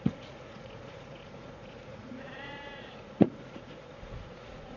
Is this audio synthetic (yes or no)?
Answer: yes